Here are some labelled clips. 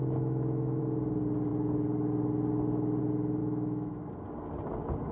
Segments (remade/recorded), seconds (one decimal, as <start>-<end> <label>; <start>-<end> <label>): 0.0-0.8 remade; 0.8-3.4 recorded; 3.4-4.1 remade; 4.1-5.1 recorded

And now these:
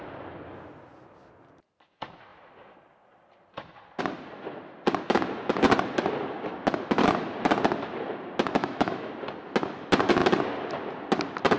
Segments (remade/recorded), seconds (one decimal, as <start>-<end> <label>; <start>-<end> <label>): 0.0-8.6 recorded; 8.6-9.1 remade; 9.1-11.6 recorded

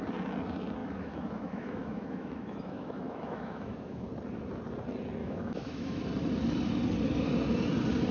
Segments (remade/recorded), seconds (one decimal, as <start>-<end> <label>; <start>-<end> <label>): 0.0-0.8 recorded; 0.8-4.1 remade; 4.1-5.2 recorded; 5.2-6.0 remade; 6.0-8.1 recorded

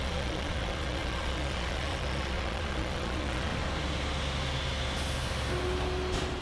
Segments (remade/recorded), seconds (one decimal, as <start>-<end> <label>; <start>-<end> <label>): 0.0-3.5 remade; 3.5-6.4 recorded

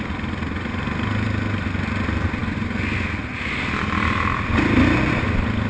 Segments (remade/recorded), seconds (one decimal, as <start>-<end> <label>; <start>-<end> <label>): 0.0-5.7 recorded

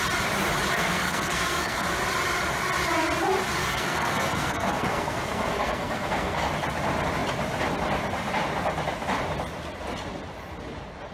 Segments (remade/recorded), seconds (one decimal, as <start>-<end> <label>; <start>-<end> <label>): 0.0-0.7 recorded; 0.7-1.9 remade; 1.9-3.6 recorded; 3.6-6.5 remade; 6.5-11.1 recorded

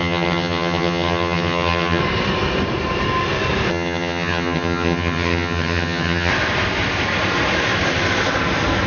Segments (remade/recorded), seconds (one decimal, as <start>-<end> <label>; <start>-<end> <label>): 0.0-2.0 remade; 2.0-3.7 recorded; 3.7-6.3 remade; 6.3-8.9 recorded

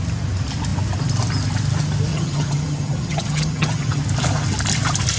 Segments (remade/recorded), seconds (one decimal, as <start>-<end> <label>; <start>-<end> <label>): 0.0-2.1 recorded; 2.1-4.0 remade; 4.0-5.2 recorded